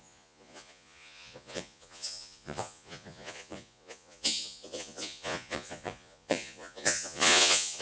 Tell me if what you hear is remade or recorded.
remade